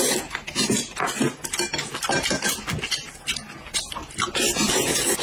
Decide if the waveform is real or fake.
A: real